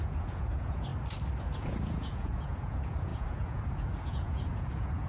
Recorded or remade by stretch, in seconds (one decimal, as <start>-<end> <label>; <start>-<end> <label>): 0.0-0.9 remade; 0.9-1.4 recorded; 1.4-5.1 remade